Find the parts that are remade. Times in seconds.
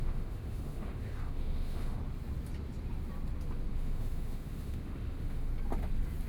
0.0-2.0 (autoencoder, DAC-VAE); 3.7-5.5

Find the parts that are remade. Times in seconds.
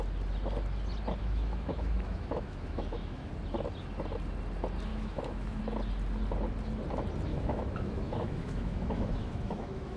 1.2-3.3 (autoencoder, DAC-VAE); 4.9-5.6; 7.3-10.0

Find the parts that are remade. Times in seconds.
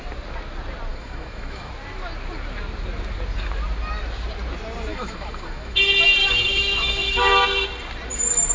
0.9-1.7 (autoencoder, DAC-VAE); 4.9-5.8; 6.2-7.3